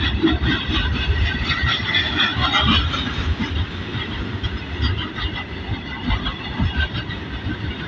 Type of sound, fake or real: real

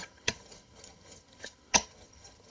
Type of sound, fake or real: fake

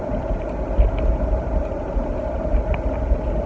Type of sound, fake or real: real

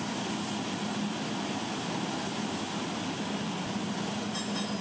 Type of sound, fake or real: real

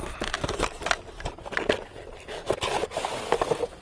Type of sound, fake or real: real